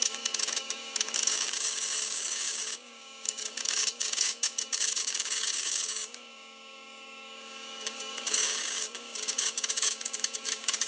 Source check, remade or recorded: remade